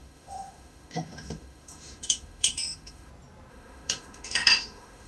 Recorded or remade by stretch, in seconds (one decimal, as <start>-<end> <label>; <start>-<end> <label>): 0.0-3.1 remade; 3.1-3.5 recorded; 3.5-5.1 remade